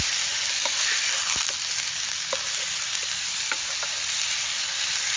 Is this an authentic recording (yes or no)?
yes